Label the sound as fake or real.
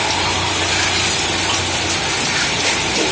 real